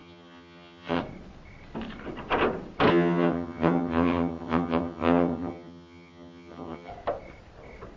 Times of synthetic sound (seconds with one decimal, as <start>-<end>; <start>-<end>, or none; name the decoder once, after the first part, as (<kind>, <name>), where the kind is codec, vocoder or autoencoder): 0.0-1.0 (vocoder, HiFi-GAN); 2.9-6.9